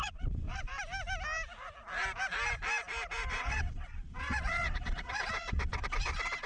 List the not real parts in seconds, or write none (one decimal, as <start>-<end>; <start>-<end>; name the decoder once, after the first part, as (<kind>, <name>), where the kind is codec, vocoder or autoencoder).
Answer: 0.0-0.7 (vocoder, WaveNeXt); 3.3-6.5